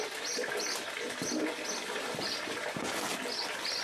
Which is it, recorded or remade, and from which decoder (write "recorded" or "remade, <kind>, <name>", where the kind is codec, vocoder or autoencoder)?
recorded